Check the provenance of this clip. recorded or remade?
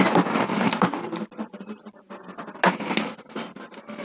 recorded